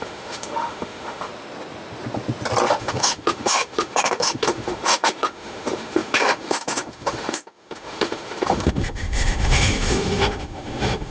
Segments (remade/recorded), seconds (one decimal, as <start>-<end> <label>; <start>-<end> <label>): 0.0-1.3 remade; 1.3-2.8 recorded; 2.8-11.1 remade